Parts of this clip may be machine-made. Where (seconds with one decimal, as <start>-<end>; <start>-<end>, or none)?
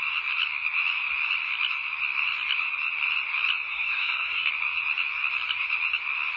3.7-4.5